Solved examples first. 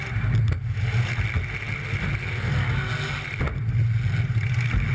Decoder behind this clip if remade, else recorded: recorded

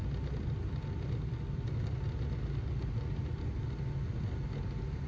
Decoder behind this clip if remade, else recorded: recorded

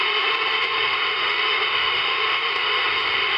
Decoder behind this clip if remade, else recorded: remade, autoencoder, DAC-VAE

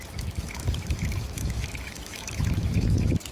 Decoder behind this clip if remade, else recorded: remade, autoencoder, DAC-VAE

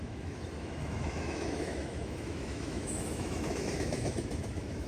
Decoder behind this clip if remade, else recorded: remade, autoencoder, DAC-VAE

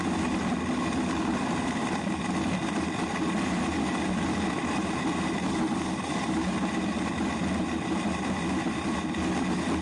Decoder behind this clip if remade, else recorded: recorded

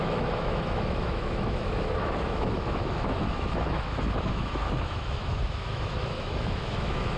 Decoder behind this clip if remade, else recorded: remade, autoencoder, DAC-VAE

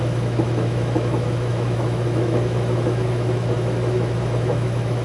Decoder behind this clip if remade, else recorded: remade, autoencoder, DAC-VAE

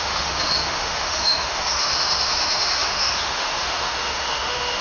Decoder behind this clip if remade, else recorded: remade, autoencoder, DAC-VAE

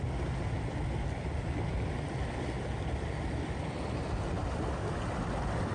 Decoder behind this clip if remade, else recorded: recorded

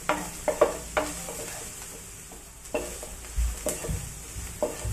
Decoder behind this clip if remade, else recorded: recorded